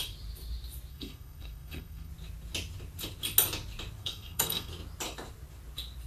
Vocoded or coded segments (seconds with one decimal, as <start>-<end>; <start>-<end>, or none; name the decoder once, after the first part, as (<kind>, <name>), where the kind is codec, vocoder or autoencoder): 0.9-2.1 (codec, SNAC); 4.0-4.7